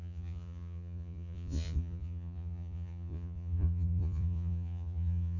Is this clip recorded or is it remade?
remade